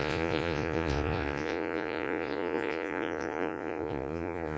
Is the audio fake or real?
fake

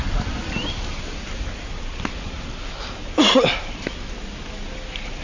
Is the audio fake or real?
real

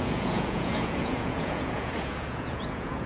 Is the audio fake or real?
fake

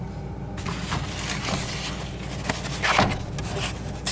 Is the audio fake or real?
real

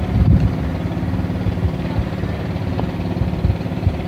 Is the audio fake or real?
real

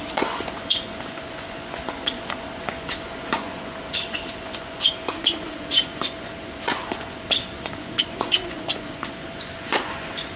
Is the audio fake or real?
fake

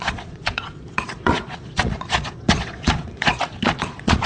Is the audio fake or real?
fake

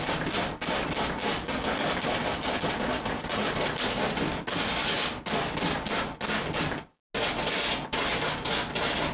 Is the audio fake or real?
real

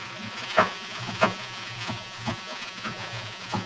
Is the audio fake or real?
fake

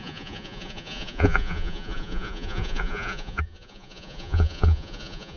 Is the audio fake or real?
fake